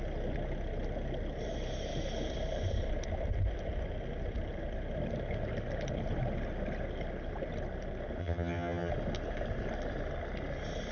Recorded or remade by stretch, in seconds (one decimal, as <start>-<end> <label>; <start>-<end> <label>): 0.0-8.2 recorded; 8.2-8.9 remade; 8.9-10.9 recorded

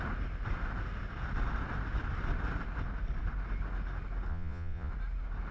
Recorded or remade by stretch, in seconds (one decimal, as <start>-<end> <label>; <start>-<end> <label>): 0.0-4.3 recorded; 4.3-4.9 remade; 4.9-5.5 recorded

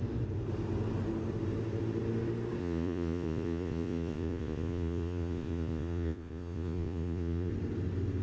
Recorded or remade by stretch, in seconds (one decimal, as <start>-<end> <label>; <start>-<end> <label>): 0.0-2.6 recorded; 2.6-7.5 remade; 7.5-8.2 recorded

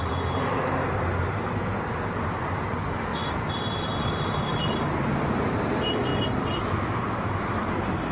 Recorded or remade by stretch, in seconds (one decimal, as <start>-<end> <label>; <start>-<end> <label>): 0.0-3.1 remade; 3.1-3.8 recorded; 3.8-8.1 remade

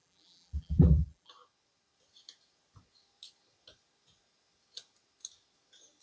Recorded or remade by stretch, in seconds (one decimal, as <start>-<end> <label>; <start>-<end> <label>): 0.0-1.3 remade; 1.3-6.0 recorded